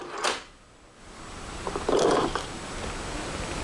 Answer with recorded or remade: recorded